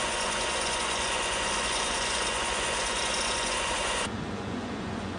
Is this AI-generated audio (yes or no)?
yes